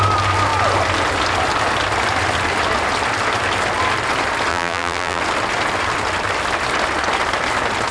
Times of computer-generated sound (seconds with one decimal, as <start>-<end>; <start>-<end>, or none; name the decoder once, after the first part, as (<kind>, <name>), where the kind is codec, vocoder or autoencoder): 4.5-5.2 (vocoder, BigVGAN v2)